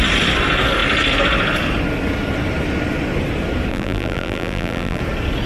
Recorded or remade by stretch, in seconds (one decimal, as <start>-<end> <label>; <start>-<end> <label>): 0.0-3.7 recorded; 3.7-5.0 remade; 5.0-5.5 recorded